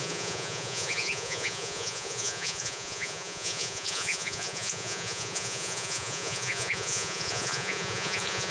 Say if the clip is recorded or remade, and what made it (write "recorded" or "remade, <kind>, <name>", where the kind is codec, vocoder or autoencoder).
remade, vocoder, Vocos